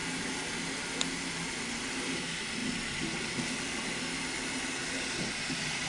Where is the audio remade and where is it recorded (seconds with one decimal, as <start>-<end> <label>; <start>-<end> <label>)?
0.0-5.9 recorded

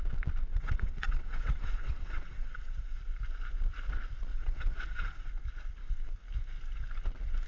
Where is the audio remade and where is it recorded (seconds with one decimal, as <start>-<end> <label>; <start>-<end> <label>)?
0.0-0.5 recorded; 0.5-3.0 remade; 3.0-4.3 recorded; 4.3-5.3 remade; 5.3-7.5 recorded

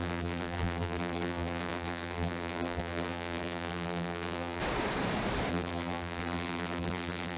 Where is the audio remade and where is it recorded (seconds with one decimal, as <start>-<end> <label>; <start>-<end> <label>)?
0.0-4.6 remade; 4.6-5.5 recorded; 5.5-7.4 remade

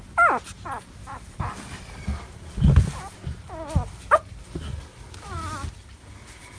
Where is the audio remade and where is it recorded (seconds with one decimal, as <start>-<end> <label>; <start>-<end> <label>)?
0.0-6.6 recorded

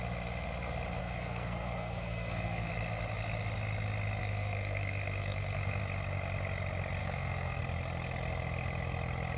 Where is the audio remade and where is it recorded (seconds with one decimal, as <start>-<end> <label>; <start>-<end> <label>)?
0.0-1.0 recorded; 1.0-2.7 remade; 2.7-4.2 recorded; 4.2-5.8 remade; 5.8-7.0 recorded; 7.0-7.6 remade; 7.6-9.4 recorded

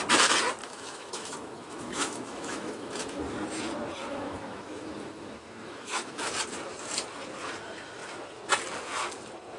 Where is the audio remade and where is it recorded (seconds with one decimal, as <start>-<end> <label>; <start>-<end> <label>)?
0.0-0.6 recorded; 0.6-3.2 remade; 3.2-4.1 recorded; 4.1-6.3 remade; 6.3-9.6 recorded

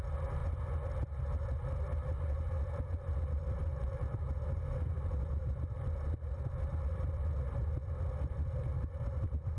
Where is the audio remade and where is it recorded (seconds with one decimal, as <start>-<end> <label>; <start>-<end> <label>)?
0.0-9.6 recorded